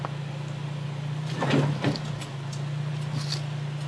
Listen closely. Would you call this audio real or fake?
real